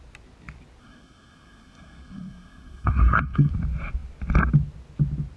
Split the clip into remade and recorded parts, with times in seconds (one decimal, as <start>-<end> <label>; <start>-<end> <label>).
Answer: 0.0-0.8 recorded; 0.8-3.5 remade; 3.5-5.4 recorded